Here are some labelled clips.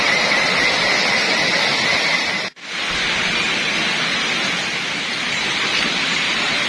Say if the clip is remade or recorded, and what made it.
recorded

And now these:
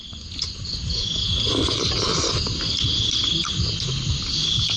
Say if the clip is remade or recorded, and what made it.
recorded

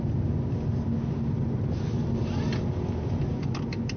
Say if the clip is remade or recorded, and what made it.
recorded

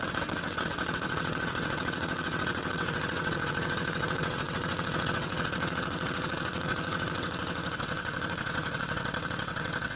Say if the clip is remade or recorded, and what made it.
remade, vocoder, WaveNeXt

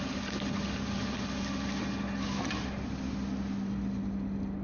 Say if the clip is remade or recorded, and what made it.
recorded